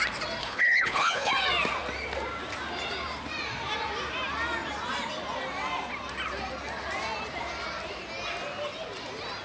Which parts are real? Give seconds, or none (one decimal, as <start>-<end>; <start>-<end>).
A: 0.0-0.4; 1.3-9.4